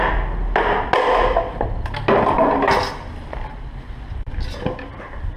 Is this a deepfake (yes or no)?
no